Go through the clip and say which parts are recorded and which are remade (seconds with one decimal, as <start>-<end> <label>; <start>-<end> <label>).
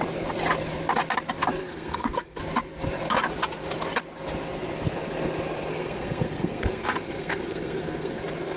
0.0-1.6 recorded; 1.6-2.4 remade; 2.4-5.7 recorded; 5.7-8.2 remade; 8.2-8.6 recorded